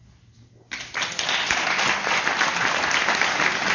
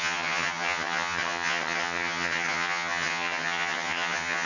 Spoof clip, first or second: second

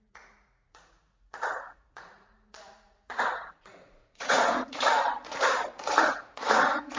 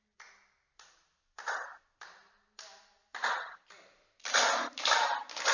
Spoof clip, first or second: first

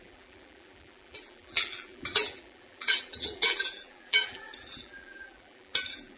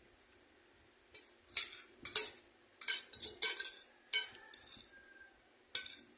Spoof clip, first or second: first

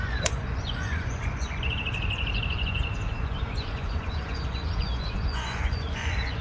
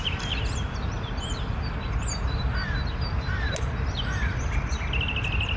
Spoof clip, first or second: first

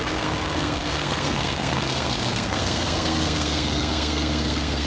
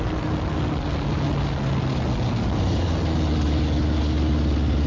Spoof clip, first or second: first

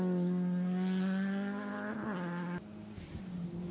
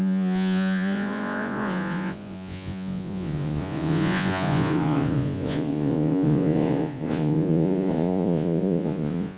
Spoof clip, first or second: second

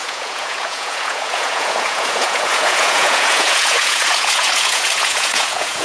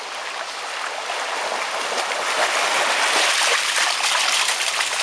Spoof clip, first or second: first